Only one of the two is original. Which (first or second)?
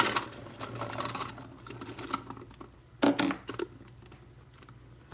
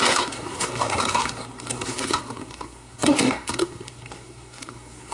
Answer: first